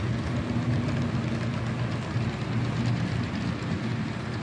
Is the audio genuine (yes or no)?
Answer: yes